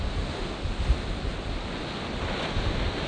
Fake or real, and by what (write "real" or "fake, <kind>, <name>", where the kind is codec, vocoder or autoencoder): real